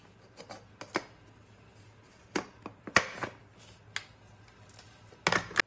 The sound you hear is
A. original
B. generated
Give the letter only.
A